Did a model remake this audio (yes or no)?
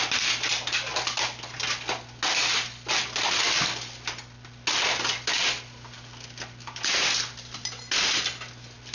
no